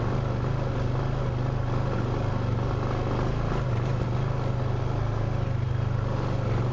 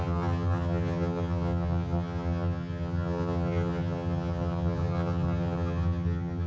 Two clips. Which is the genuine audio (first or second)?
first